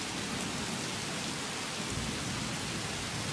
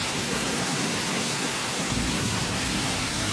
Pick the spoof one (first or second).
second